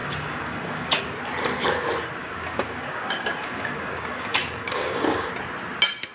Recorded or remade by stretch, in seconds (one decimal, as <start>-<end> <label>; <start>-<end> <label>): 0.0-1.0 remade; 1.0-2.2 recorded; 2.2-5.3 remade; 5.3-6.1 recorded